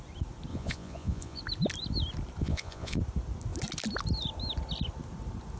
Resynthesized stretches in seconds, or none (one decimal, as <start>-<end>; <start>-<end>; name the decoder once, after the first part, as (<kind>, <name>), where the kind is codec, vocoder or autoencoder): 0.5-1.4 (vocoder, Vocos); 2.4-3.0